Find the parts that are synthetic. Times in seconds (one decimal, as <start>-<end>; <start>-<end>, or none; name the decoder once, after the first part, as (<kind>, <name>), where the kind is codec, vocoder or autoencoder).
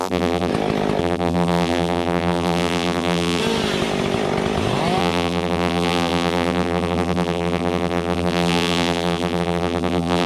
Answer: 0.0-0.5 (vocoder, BigVGAN v2); 1.0-3.4; 5.0-10.3